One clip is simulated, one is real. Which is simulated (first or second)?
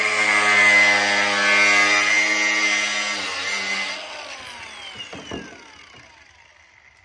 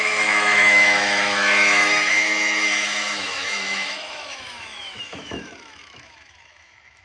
second